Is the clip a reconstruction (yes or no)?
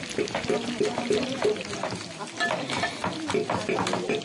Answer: no